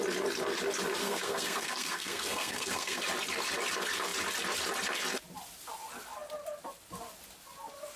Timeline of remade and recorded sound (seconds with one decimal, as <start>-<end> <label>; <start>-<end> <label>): 0.0-1.0 recorded; 1.0-3.0 remade; 3.0-8.0 recorded